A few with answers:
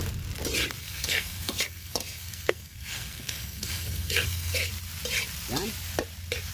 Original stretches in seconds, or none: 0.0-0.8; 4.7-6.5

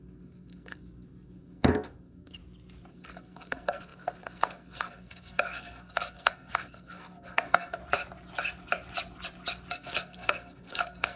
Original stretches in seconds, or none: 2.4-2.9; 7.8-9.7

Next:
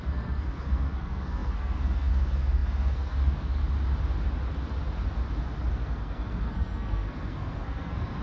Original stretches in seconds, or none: 3.6-5.7